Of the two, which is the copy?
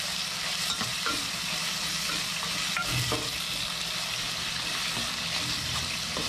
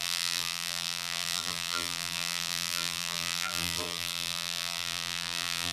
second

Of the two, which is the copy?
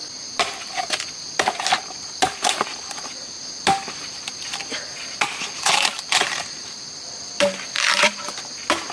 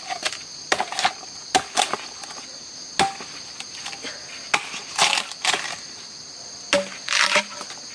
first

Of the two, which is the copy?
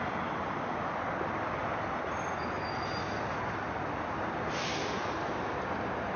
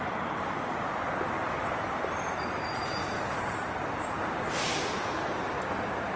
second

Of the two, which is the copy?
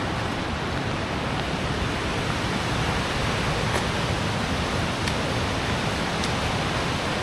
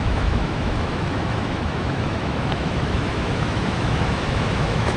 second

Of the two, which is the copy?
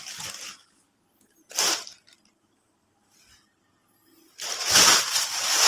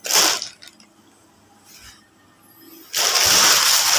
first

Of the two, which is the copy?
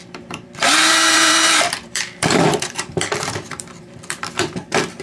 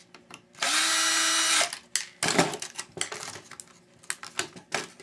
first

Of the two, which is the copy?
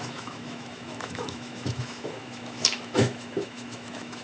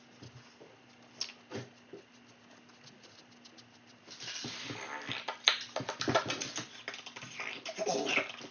first